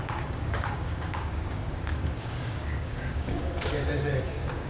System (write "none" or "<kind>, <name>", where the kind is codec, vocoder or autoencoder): codec, DAC